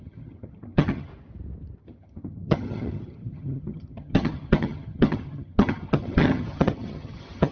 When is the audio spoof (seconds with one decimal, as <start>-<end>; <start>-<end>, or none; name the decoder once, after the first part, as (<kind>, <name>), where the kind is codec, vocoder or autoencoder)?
0.0-1.1 (vocoder, HiFi-GAN); 1.8-7.5